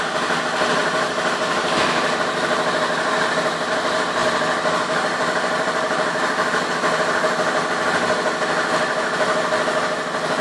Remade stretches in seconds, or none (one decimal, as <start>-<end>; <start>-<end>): 4.2-6.7